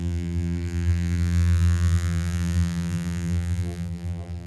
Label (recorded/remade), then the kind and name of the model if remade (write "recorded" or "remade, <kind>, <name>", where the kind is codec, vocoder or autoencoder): remade, vocoder, BigVGAN v2